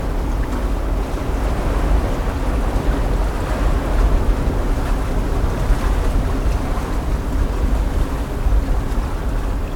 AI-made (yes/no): no